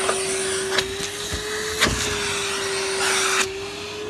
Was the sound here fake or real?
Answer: real